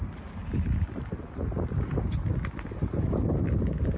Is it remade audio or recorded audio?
recorded